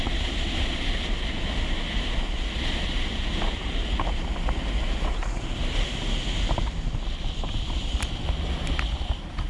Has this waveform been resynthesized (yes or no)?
no